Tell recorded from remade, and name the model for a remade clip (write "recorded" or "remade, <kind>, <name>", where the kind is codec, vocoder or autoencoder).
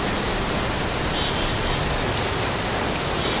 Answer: recorded